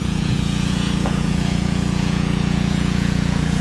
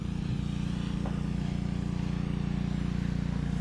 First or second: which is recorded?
second